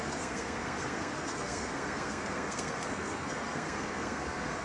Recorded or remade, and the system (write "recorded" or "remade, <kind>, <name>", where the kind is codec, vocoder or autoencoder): remade, codec, SNAC